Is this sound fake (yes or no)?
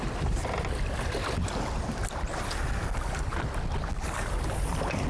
no